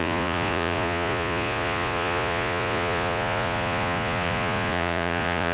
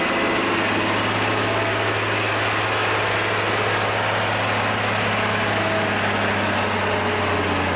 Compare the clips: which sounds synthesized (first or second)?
first